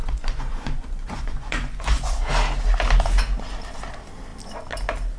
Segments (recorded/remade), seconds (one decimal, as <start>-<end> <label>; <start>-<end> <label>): 0.0-2.3 remade; 2.3-5.2 recorded